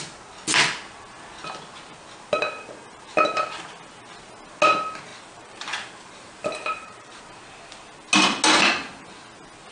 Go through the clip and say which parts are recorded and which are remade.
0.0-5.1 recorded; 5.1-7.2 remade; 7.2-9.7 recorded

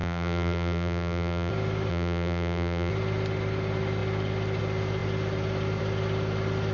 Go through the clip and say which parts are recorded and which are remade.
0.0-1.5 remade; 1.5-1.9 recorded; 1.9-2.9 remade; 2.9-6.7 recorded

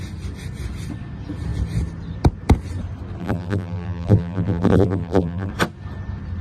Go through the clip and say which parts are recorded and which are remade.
0.0-3.2 recorded; 3.2-5.5 remade; 5.5-6.4 recorded

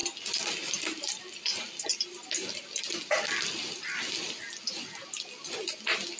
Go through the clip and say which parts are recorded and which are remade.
0.0-6.2 recorded

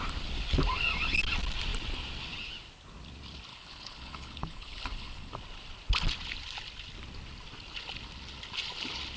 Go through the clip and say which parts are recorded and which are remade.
0.0-3.5 recorded; 3.5-5.3 remade; 5.3-9.2 recorded

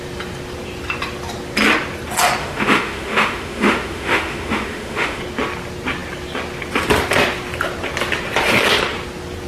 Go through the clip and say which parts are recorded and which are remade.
0.0-2.4 recorded; 2.4-5.2 remade; 5.2-9.5 recorded

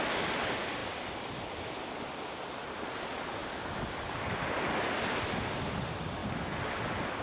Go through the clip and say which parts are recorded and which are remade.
0.0-0.8 recorded; 0.8-1.6 remade; 1.6-3.4 recorded; 3.4-4.4 remade; 4.4-7.2 recorded

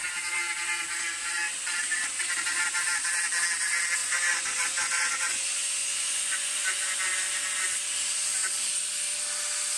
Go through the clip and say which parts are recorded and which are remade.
0.0-4.0 recorded; 4.0-7.0 remade; 7.0-9.8 recorded